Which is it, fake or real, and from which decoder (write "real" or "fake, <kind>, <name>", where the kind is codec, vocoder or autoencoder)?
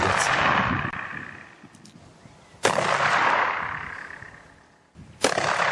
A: real